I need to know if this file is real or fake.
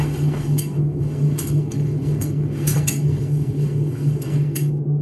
fake